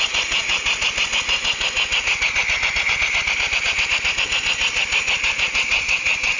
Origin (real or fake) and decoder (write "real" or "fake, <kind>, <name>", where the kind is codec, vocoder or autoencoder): real